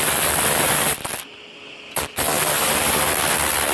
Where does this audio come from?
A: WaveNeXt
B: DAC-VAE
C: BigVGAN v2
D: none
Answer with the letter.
C